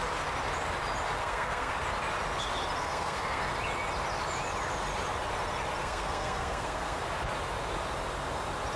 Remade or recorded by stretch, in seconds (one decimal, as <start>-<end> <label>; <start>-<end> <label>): 0.0-1.2 recorded; 1.2-1.7 remade; 1.7-2.8 recorded; 2.8-3.4 remade; 3.4-5.8 recorded; 5.8-7.0 remade; 7.0-8.8 recorded

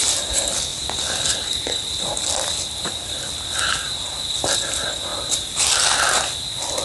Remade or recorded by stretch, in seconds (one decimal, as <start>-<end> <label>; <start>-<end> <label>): 0.0-6.8 recorded

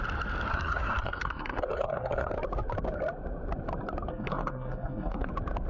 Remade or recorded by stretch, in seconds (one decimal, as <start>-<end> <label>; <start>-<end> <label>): 0.0-0.5 recorded; 0.5-2.3 remade; 2.3-4.1 recorded; 4.1-5.3 remade; 5.3-5.7 recorded

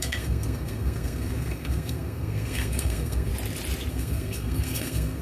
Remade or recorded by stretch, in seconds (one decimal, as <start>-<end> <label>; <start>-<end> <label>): 0.0-3.3 remade; 3.3-3.9 recorded; 3.9-5.2 remade

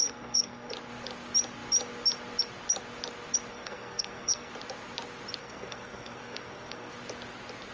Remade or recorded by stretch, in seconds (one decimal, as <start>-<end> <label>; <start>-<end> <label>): 0.0-0.7 remade; 0.7-3.5 recorded; 3.5-4.5 remade; 4.5-5.4 recorded; 5.4-6.9 remade; 6.9-7.7 recorded